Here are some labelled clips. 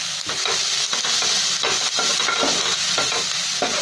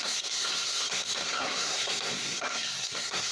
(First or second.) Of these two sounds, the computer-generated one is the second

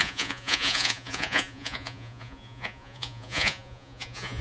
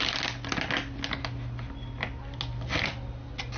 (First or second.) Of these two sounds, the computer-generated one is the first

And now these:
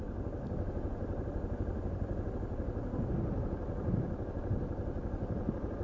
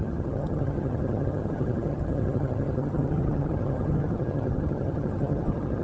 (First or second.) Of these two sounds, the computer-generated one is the second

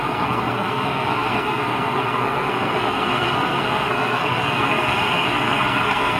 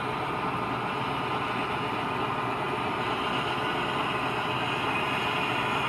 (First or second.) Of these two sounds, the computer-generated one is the first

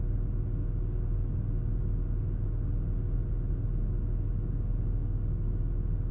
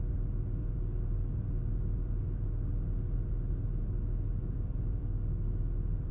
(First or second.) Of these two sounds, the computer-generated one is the second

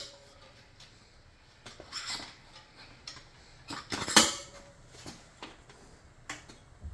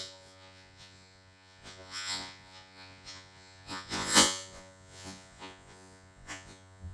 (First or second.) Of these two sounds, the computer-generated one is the second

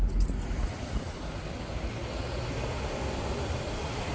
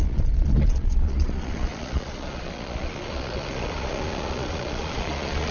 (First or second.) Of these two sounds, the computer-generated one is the second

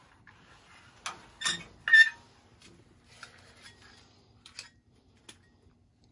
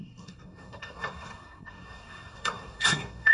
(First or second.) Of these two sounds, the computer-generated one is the second